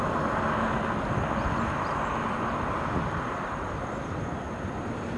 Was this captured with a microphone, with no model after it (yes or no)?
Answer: yes